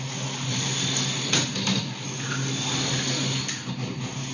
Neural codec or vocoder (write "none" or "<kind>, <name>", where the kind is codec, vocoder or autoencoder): none